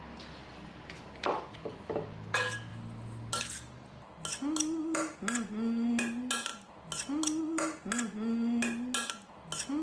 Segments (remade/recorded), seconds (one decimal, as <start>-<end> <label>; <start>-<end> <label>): 0.0-9.8 recorded